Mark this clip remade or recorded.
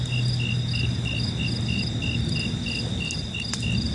recorded